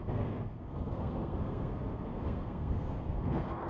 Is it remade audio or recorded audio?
remade